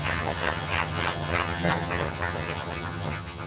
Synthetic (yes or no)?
yes